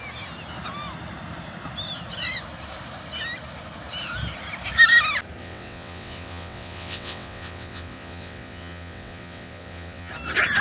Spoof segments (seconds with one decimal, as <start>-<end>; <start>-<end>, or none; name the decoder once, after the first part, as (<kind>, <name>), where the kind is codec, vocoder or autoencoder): 5.4-10.1 (vocoder, WaveNeXt)